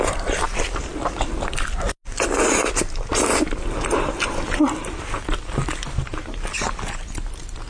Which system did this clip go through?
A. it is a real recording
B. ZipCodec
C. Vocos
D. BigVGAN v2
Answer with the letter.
A